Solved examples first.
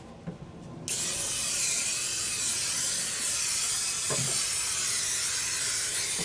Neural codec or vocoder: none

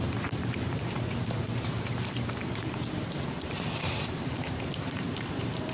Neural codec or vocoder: vocoder, BigVGAN v2